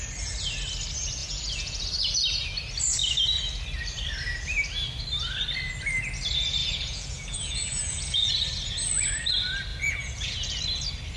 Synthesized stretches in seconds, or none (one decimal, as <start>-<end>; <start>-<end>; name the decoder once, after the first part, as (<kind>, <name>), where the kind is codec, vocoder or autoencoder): 1.2-1.8 (vocoder, Vocos); 6.6-8.3; 9.7-10.6